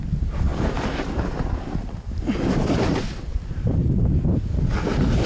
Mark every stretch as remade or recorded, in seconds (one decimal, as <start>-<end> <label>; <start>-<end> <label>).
0.0-0.5 recorded; 0.5-2.5 remade; 2.5-3.3 recorded; 3.3-4.1 remade; 4.1-5.3 recorded